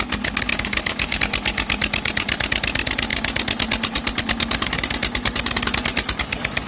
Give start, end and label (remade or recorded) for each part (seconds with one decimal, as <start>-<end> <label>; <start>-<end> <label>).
0.0-0.5 recorded; 0.5-1.2 remade; 1.2-6.7 recorded